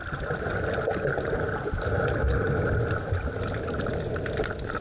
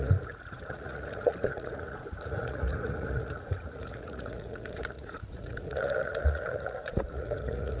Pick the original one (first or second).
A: first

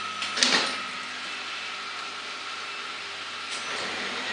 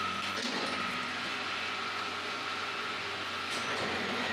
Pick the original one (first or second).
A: first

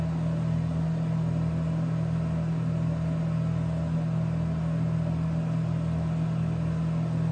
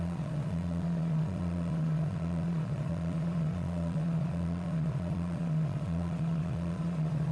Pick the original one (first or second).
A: first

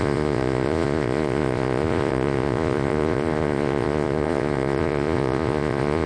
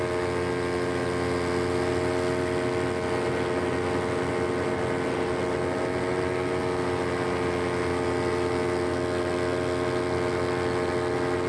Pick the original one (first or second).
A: second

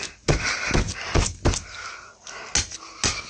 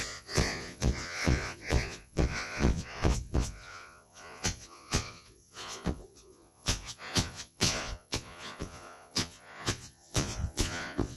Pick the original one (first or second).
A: first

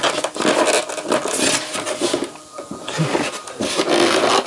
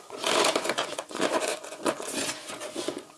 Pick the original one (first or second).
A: first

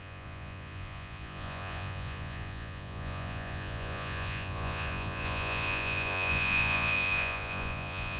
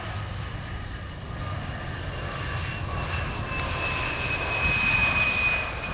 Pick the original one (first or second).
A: second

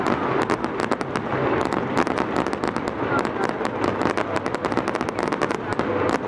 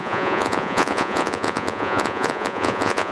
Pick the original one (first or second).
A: first